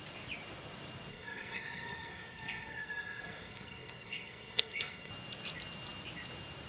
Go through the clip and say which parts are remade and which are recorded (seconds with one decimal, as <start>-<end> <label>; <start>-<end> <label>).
0.0-1.1 recorded; 1.1-5.1 remade; 5.1-6.7 recorded